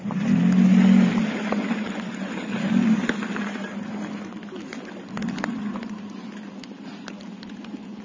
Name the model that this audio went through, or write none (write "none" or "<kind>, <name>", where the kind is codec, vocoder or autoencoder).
none